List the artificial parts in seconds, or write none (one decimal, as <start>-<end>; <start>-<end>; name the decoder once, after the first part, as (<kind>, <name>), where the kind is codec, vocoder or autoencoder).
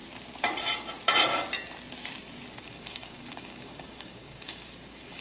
2.6-5.2 (codec, DAC)